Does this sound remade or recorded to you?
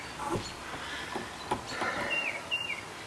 recorded